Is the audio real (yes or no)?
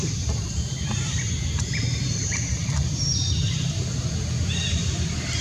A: no